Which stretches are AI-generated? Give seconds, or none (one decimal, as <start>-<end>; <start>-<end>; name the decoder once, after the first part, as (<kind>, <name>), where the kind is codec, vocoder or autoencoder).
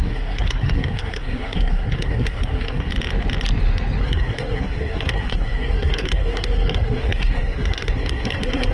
0.0-2.9 (codec, SNAC); 4.0-8.7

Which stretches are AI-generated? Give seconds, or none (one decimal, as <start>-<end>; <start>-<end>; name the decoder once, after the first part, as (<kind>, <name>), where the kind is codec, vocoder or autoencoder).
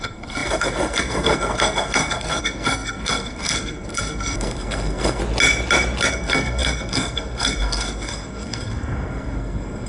0.0-5.2 (codec, SNAC); 6.1-9.9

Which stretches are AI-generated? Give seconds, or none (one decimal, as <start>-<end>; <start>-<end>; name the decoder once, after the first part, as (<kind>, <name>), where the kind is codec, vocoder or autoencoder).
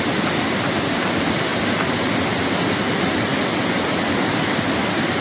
none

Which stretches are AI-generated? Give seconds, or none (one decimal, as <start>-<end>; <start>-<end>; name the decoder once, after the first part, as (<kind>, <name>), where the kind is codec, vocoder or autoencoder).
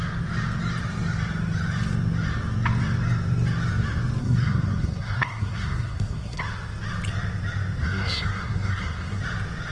4.2-6.4 (codec, SNAC); 7.8-9.2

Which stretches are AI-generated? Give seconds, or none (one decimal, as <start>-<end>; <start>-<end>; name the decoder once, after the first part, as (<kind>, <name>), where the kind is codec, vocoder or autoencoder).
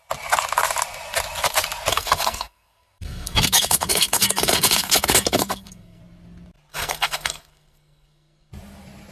1.9-6.0 (codec, SNAC); 6.7-8.5